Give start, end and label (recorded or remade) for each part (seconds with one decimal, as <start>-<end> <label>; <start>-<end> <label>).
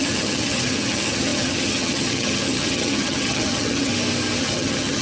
0.0-3.9 remade; 3.9-4.4 recorded; 4.4-5.0 remade